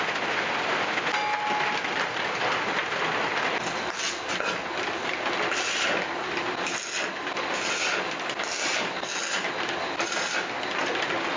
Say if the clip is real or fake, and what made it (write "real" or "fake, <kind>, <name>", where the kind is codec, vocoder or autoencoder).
real